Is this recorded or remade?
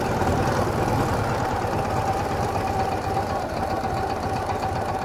recorded